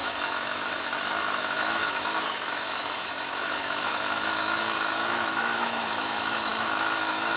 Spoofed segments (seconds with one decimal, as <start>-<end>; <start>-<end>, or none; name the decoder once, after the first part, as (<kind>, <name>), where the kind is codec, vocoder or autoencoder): 0.0-7.4 (autoencoder, DAC-VAE)